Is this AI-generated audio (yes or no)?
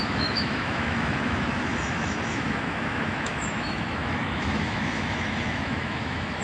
yes